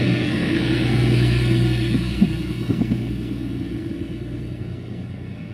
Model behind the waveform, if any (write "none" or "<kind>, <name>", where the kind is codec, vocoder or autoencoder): codec, SNAC